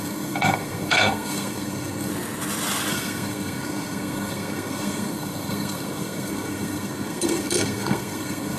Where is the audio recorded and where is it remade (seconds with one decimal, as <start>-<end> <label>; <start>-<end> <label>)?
0.0-2.1 remade; 2.1-2.9 recorded; 2.9-8.6 remade